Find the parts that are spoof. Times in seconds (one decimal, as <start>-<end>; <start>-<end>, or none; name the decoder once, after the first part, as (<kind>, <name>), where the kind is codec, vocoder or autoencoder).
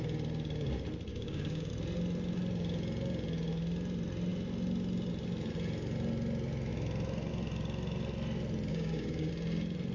1.1-1.7 (codec, DAC); 8.7-9.3